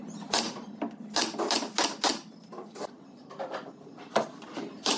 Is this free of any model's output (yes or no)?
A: yes